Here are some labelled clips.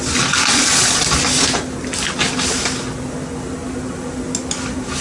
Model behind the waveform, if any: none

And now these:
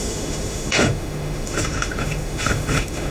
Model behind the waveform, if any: autoencoder, DAC-VAE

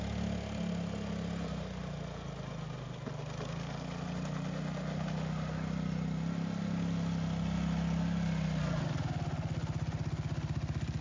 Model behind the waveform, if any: none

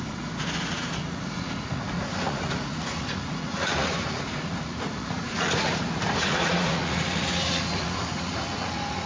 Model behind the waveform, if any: vocoder, Vocos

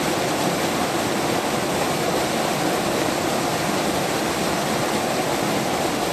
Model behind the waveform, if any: none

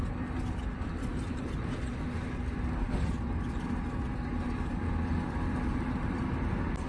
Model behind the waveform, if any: none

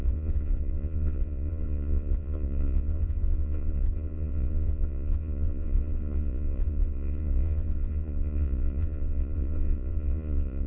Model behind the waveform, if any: vocoder, Vocos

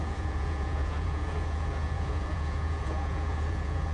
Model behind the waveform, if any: vocoder, Vocos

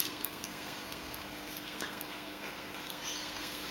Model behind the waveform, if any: codec, SNAC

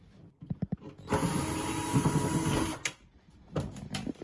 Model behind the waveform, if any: none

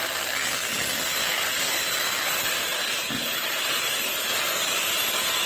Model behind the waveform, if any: none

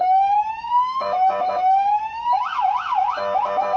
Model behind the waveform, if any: autoencoder, DAC-VAE